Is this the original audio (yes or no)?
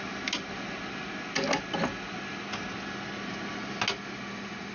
yes